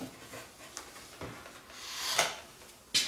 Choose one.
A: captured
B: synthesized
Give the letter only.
A